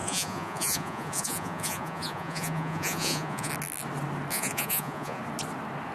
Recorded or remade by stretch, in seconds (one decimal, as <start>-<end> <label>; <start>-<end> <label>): 0.0-3.5 remade; 3.5-4.3 recorded; 4.3-5.2 remade; 5.2-5.9 recorded

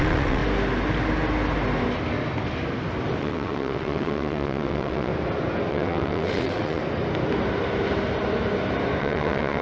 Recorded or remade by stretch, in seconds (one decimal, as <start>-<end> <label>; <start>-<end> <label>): 0.0-0.4 remade; 0.4-3.2 recorded; 3.2-5.1 remade; 5.1-5.7 recorded; 5.7-6.8 remade; 6.8-9.0 recorded; 9.0-9.6 remade

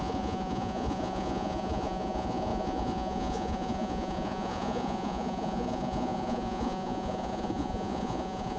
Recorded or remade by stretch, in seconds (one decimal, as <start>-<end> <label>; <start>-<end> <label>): 0.0-8.6 remade

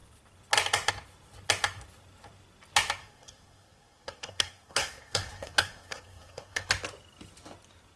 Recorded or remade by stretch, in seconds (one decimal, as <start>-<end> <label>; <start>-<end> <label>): 0.0-3.0 recorded; 3.0-6.7 remade; 6.7-8.0 recorded

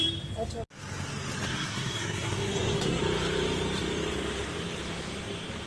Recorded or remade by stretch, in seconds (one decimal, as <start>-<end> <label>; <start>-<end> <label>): 0.0-1.5 recorded; 1.5-3.0 remade; 3.0-5.7 recorded

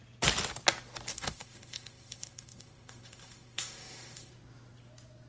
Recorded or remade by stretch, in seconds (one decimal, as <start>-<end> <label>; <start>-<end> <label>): 0.0-1.1 recorded; 1.1-4.3 remade; 4.3-5.3 recorded

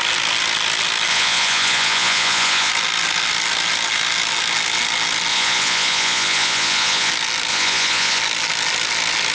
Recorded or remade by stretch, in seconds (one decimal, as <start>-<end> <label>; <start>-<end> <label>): 0.0-1.1 recorded; 1.1-2.7 remade; 2.7-5.3 recorded; 5.3-7.1 remade; 7.1-7.5 recorded; 7.5-8.2 remade; 8.2-9.3 recorded

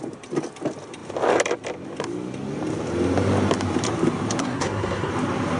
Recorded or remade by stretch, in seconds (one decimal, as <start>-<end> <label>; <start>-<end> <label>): 0.0-4.4 recorded; 4.4-5.1 remade; 5.1-5.6 recorded